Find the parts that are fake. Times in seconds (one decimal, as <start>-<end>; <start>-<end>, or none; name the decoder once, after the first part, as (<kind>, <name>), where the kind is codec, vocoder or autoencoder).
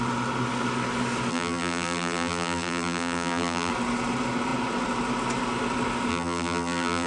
1.3-3.7 (vocoder, BigVGAN v2); 6.1-7.1